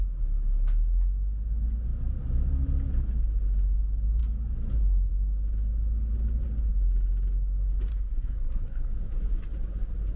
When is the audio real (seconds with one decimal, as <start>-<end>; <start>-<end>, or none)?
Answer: 0.0-7.9; 8.9-10.2